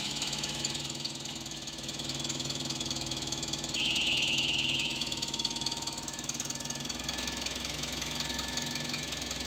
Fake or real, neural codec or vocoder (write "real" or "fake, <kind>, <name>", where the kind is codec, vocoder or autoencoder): fake, autoencoder, DAC-VAE